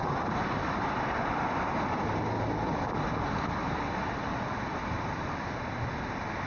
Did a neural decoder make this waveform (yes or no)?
no